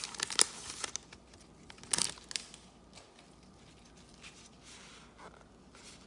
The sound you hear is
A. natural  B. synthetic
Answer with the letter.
A